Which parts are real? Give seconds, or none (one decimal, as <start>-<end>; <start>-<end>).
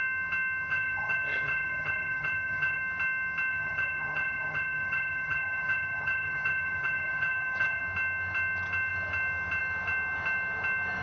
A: 0.0-0.7; 2.8-3.5; 7.8-11.0